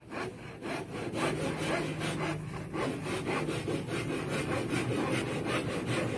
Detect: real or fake real